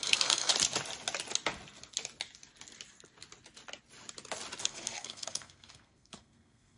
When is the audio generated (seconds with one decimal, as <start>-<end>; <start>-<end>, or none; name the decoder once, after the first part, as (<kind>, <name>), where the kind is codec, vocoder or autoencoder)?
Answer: 0.0-0.5 (codec, SNAC); 4.6-6.8